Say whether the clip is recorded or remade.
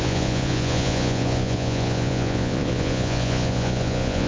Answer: remade